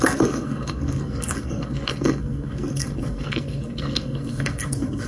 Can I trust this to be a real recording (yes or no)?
no